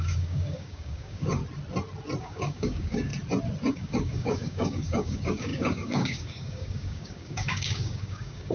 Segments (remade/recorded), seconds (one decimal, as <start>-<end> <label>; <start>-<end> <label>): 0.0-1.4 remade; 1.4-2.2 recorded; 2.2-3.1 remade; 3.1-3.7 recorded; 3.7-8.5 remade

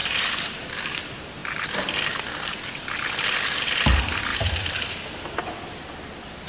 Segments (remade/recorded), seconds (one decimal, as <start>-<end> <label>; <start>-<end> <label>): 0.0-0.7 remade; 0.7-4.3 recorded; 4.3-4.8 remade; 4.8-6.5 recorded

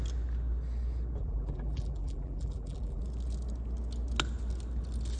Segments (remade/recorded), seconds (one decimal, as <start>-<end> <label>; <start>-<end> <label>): 0.0-1.2 recorded; 1.2-3.0 remade; 3.0-5.2 recorded